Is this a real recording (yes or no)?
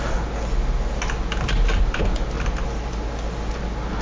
yes